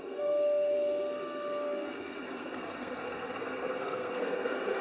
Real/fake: fake